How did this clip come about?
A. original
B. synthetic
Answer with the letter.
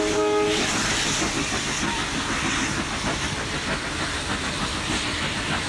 A